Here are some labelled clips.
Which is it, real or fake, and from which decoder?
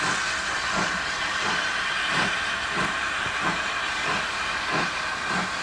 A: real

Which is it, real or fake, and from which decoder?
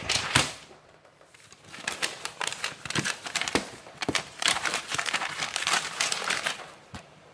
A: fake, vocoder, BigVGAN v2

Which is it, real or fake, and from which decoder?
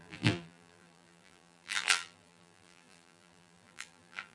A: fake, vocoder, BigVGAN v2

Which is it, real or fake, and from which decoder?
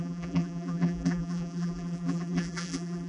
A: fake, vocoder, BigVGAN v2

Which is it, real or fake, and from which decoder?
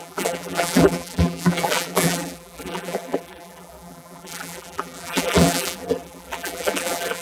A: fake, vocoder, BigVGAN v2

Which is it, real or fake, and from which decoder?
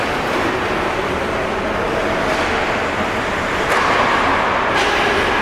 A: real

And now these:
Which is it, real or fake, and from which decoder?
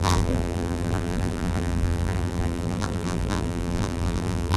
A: fake, vocoder, BigVGAN v2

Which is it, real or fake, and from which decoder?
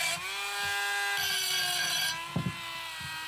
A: real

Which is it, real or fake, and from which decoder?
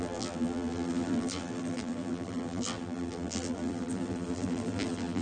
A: fake, vocoder, BigVGAN v2